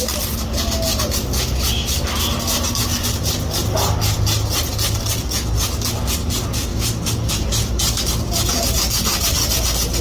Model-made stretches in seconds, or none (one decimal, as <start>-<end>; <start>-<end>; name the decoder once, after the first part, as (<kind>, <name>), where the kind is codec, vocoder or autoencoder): none